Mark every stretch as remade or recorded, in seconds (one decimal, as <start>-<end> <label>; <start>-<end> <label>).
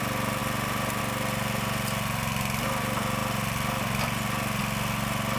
0.0-5.4 recorded